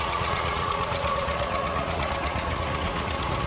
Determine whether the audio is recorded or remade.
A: remade